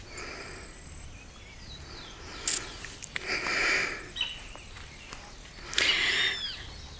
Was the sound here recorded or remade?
recorded